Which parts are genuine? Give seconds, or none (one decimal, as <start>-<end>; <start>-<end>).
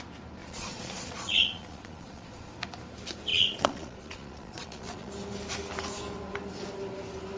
0.0-0.4; 2.5-3.3; 5.1-7.4